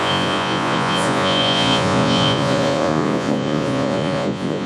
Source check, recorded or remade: remade